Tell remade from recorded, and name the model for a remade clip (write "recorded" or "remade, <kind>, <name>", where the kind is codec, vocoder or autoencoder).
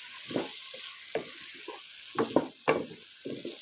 recorded